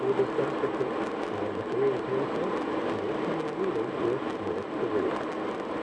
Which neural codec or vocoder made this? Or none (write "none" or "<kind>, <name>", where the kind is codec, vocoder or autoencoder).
none